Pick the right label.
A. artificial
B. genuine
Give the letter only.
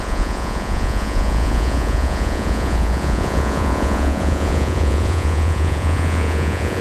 A